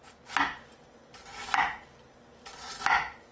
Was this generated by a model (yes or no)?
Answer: no